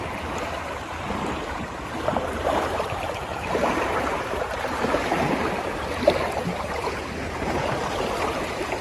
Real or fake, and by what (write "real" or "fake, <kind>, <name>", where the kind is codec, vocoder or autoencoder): fake, vocoder, BigVGAN v2